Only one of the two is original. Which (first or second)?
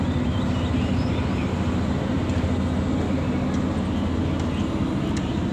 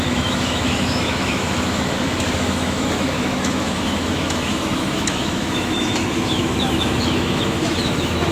first